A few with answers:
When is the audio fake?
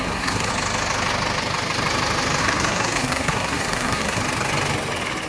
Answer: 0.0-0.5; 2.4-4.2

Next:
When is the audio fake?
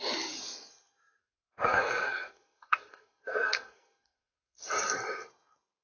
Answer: 1.2-4.7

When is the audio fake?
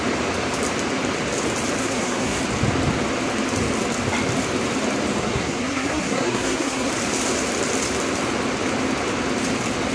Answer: 1.8-2.4; 5.2-6.9